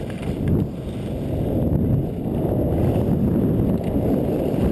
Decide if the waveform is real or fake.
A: real